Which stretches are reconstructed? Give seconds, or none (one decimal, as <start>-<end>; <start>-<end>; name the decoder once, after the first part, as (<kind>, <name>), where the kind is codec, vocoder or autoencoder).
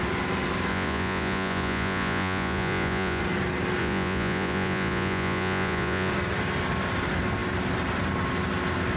0.7-3.2 (vocoder, Vocos); 3.8-6.1